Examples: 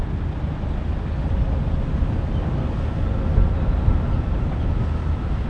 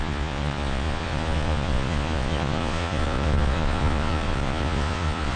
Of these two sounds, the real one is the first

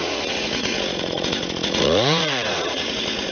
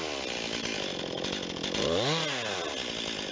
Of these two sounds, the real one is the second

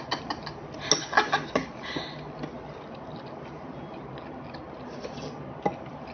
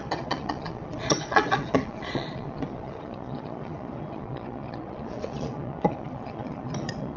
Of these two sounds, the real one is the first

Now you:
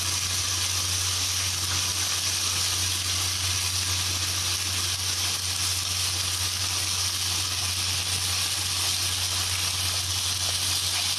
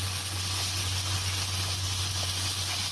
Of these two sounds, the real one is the first